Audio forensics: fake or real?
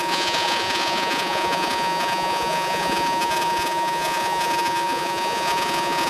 fake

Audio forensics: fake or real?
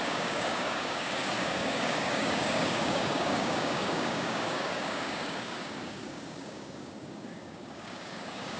fake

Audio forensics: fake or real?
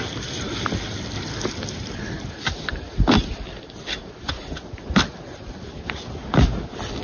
real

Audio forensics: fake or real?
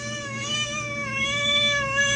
fake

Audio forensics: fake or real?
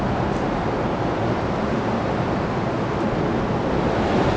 real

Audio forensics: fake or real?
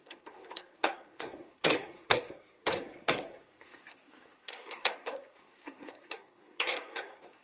fake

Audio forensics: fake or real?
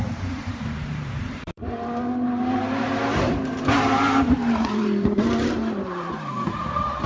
fake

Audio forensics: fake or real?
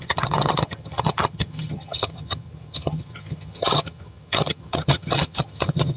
fake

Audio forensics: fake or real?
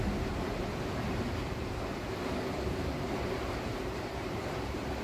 fake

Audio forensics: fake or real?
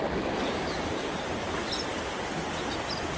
real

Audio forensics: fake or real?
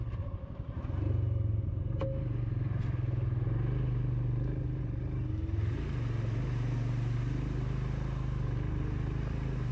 real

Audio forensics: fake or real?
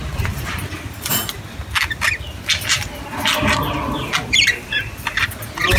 real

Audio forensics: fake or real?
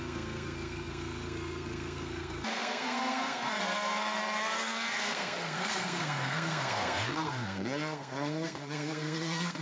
fake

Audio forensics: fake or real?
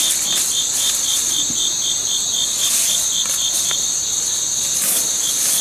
real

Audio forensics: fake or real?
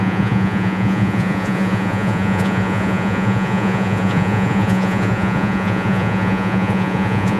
fake